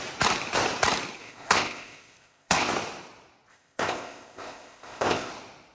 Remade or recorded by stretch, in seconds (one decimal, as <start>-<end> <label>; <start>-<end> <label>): 0.0-1.2 recorded; 1.2-2.7 remade; 2.7-3.5 recorded; 3.5-5.3 remade; 5.3-5.7 recorded

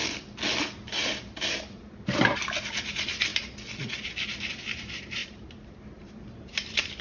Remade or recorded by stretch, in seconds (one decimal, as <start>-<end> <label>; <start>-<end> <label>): 0.0-0.6 recorded; 0.6-3.3 remade; 3.3-4.5 recorded; 4.5-7.0 remade